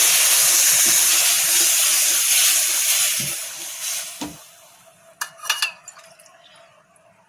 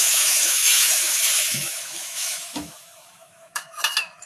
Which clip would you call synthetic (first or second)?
second